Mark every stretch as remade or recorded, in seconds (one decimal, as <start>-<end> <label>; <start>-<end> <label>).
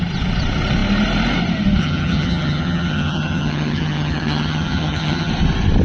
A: 0.0-1.8 recorded; 1.8-5.3 remade; 5.3-5.8 recorded